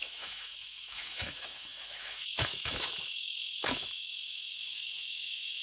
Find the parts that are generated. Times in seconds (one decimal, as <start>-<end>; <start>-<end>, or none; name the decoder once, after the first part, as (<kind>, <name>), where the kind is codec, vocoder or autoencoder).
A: 0.0-5.6 (autoencoder, DAC-VAE)